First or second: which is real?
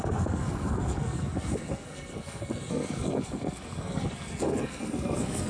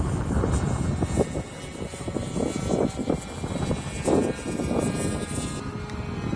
second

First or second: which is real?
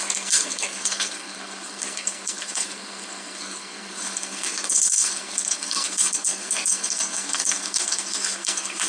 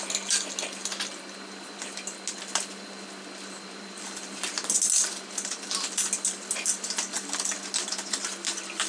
second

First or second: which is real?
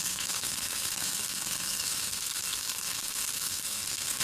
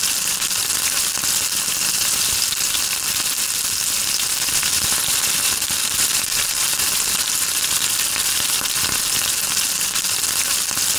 second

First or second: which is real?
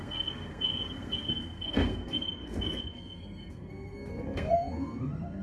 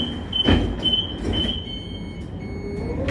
second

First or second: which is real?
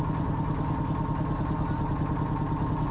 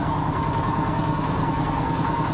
first